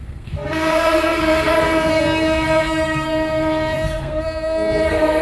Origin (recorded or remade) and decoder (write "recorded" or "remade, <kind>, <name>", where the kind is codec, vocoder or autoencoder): remade, codec, SNAC